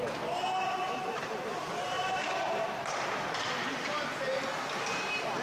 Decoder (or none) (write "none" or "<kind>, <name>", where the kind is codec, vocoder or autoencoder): vocoder, BigVGAN v2